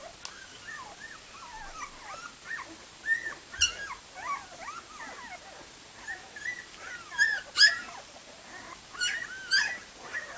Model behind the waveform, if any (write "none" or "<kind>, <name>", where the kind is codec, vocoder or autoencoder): none